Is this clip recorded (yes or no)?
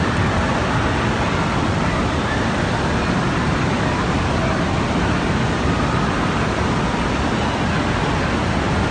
yes